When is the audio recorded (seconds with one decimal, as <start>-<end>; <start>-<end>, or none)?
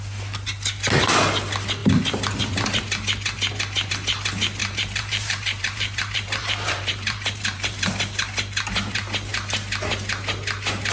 0.0-4.6; 7.9-10.9